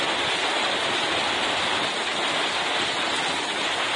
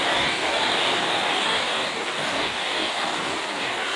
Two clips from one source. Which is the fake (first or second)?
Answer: second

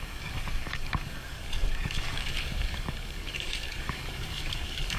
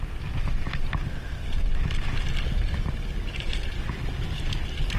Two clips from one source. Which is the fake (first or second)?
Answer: first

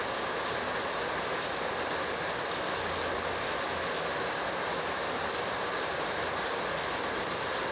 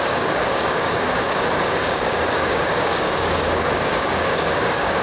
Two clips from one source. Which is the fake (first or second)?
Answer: second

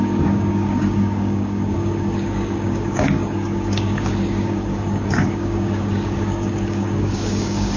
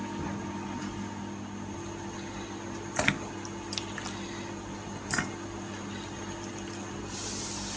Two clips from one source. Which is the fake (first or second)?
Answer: first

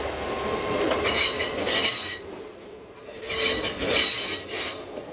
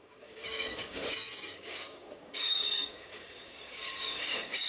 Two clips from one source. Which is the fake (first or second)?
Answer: second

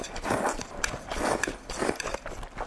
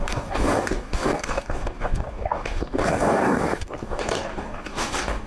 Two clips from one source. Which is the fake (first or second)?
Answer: second